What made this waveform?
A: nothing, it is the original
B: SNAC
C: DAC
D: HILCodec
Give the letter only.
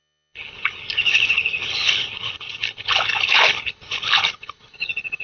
D